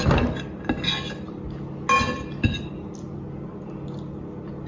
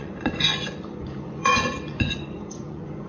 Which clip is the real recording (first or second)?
first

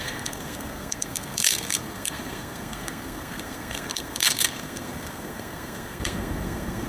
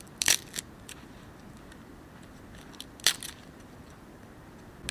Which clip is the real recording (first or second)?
second